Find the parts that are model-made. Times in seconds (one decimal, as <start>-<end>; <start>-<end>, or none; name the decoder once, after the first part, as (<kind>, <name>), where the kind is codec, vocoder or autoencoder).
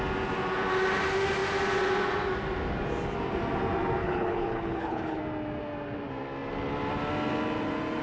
4.0-5.2 (codec, HILCodec)